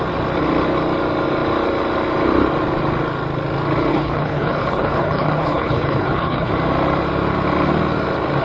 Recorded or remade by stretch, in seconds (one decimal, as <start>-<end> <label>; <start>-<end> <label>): 0.0-3.9 recorded; 3.9-6.5 remade; 6.5-8.4 recorded